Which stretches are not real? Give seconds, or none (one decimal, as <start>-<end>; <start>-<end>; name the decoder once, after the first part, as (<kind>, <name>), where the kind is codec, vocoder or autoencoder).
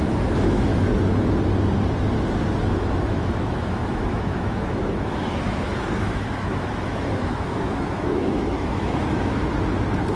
0.0-0.7 (autoencoder, DAC-VAE); 2.6-9.4